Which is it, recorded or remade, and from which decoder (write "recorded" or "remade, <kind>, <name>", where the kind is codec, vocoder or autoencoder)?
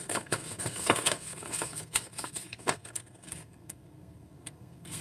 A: remade, codec, SNAC